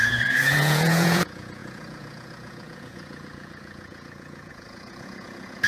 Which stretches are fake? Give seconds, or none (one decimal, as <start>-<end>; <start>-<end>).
0.0-5.7